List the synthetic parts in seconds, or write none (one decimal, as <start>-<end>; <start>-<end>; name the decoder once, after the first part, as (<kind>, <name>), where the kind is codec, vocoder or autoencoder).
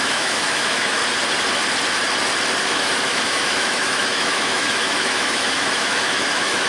0.0-1.0 (autoencoder, DAC-VAE); 2.6-6.7